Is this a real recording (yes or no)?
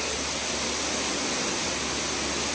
yes